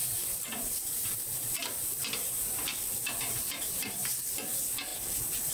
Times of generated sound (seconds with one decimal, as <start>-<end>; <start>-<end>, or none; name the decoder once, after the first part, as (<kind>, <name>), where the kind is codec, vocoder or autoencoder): 0.0-2.0 (vocoder, BigVGAN v2); 2.7-3.9